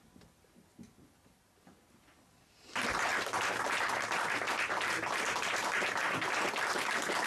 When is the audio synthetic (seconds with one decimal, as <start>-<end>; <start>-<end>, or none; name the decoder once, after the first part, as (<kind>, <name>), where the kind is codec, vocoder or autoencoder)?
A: none